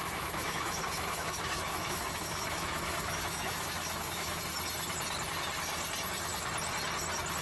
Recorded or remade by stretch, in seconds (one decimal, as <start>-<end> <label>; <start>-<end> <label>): 0.0-4.4 remade; 4.4-7.4 recorded